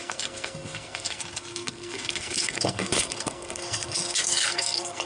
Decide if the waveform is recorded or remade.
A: remade